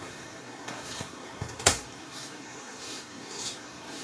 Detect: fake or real fake